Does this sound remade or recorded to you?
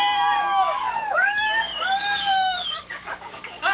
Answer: remade